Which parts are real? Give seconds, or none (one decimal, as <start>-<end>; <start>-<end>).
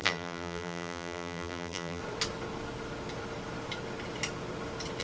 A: 2.0-5.0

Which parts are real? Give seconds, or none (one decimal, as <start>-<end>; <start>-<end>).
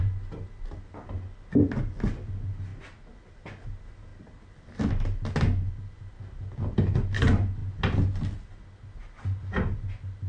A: 0.0-10.3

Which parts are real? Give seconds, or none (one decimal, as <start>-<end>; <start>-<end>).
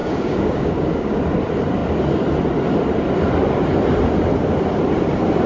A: 1.2-5.5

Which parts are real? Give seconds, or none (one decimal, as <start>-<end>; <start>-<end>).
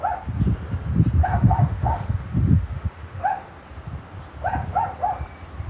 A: 0.0-1.2; 3.5-5.7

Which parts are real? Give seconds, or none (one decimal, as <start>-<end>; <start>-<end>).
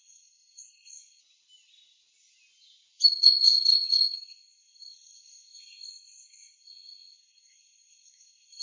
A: 1.2-3.1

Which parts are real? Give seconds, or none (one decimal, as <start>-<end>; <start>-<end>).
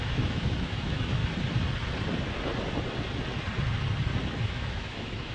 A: 1.2-4.4